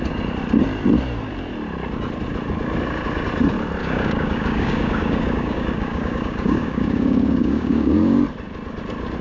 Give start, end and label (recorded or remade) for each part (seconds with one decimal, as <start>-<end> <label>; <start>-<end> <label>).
0.0-3.8 recorded; 3.8-8.2 remade; 8.2-9.2 recorded